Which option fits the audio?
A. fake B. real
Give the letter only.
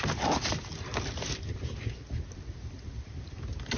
B